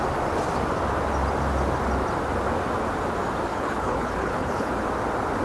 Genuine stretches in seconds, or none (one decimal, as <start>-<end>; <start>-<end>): 0.0-3.5; 4.7-5.4